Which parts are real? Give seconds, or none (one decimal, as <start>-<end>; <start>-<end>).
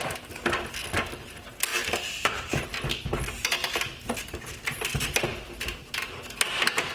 0.0-1.7; 2.4-3.6; 5.2-6.9